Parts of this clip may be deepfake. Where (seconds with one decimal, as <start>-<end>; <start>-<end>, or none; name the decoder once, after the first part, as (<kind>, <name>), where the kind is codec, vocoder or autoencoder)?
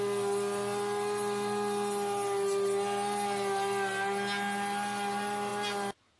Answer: none